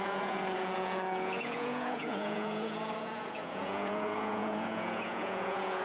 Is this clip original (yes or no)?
no